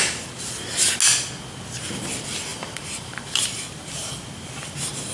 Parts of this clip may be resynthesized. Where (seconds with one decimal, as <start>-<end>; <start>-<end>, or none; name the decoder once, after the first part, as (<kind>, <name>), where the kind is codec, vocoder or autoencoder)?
2.5-4.2 (vocoder, BigVGAN v2)